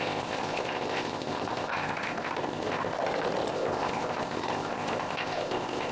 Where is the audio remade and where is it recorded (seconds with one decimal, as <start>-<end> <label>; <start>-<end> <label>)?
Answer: 0.0-3.0 remade; 3.0-3.5 recorded; 3.5-5.9 remade